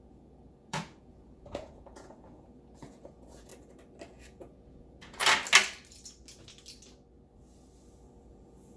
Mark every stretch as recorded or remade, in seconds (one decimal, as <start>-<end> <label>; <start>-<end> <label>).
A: 0.0-3.5 remade; 3.5-4.1 recorded; 4.1-5.2 remade; 5.2-8.3 recorded; 8.3-8.8 remade